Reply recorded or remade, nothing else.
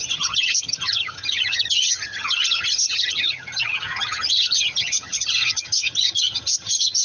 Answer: remade